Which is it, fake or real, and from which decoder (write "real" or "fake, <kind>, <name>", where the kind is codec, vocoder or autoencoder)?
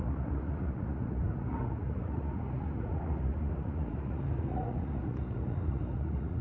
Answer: fake, vocoder, Vocos